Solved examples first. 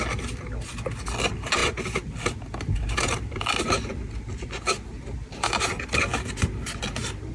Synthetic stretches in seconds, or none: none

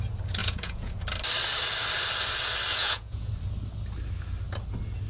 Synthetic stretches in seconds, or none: 0.4-1.0 (vocoder, Vocos); 2.7-3.3

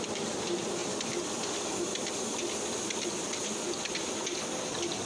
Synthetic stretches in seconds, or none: none

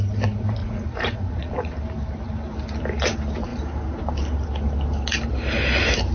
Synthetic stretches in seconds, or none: 0.6-1.7 (vocoder, Vocos)